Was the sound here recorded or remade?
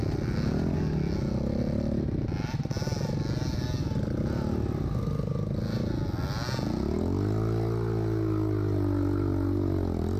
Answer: recorded